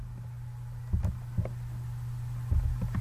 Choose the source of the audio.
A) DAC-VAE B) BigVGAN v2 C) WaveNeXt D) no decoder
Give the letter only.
D